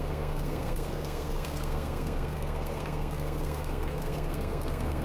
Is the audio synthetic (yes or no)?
yes